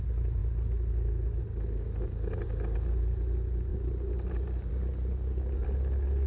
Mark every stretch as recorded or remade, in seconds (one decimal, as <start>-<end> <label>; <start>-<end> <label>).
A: 0.0-6.3 recorded